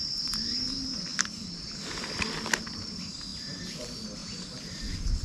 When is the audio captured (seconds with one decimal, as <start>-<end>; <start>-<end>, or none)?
0.0-5.2